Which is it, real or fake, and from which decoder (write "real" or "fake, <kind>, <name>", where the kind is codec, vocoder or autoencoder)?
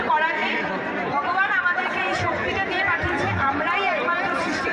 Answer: fake, vocoder, BigVGAN v2